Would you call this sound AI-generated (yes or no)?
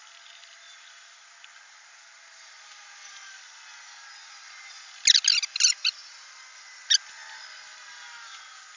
no